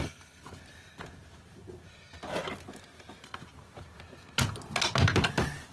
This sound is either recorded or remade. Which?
recorded